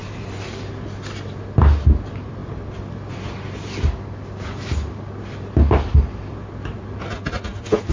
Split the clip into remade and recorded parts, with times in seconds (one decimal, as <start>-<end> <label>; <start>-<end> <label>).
0.0-7.9 recorded